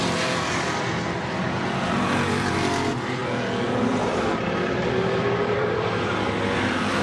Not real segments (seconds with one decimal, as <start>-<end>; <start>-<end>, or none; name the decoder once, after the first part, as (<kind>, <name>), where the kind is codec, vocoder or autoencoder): 0.0-3.2 (vocoder, BigVGAN v2); 3.8-7.0